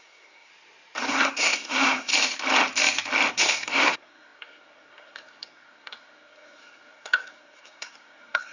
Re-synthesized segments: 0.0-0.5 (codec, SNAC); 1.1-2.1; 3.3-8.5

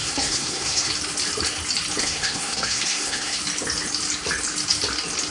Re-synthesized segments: 0.0-0.9 (codec, SNAC); 2.0-3.4

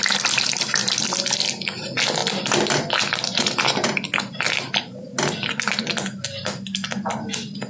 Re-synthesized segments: none

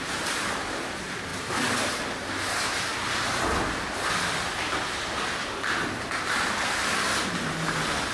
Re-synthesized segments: none